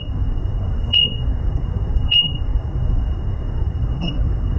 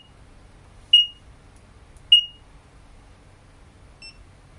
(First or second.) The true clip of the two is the second